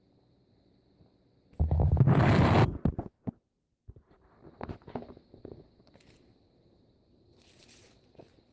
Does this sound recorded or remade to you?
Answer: recorded